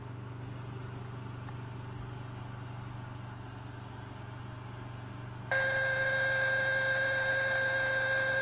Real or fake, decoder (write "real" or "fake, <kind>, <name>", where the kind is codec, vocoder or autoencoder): real